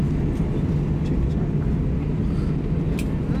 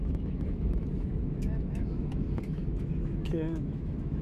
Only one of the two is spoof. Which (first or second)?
second